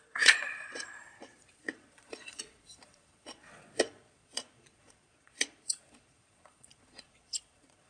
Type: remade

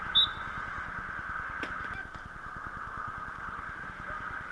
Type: recorded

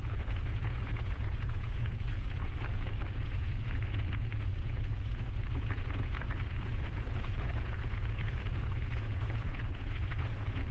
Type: remade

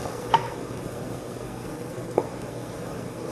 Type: remade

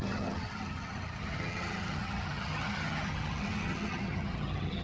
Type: remade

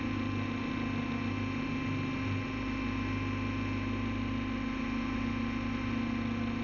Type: recorded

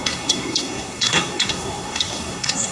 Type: remade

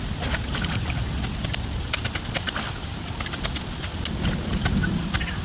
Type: recorded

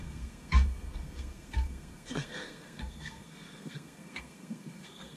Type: remade